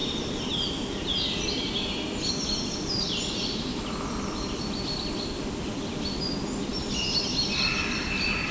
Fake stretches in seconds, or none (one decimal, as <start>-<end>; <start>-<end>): none